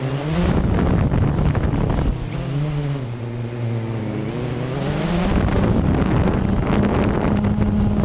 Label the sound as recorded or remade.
recorded